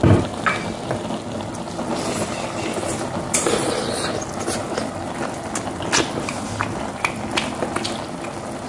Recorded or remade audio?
recorded